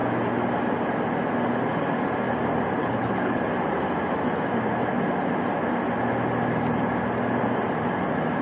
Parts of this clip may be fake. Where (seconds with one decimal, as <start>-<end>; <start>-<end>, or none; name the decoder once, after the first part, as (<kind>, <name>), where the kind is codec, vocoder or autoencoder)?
2.8-3.4 (codec, HILCodec)